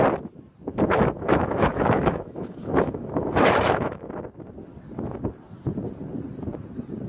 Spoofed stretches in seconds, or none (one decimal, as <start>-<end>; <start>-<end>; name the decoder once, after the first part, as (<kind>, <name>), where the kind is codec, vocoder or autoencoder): 0.7-4.2 (autoencoder, DAC-VAE)